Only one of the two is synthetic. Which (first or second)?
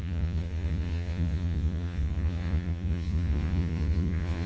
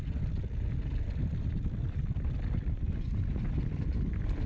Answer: first